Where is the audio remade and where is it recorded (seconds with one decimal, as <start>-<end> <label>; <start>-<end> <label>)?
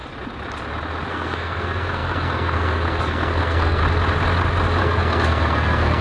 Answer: 0.0-1.1 recorded; 1.1-3.8 remade; 3.8-4.8 recorded; 4.8-6.0 remade